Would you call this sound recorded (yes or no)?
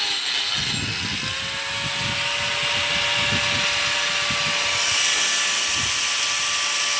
yes